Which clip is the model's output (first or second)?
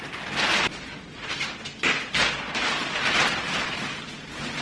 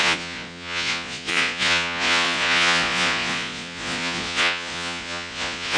second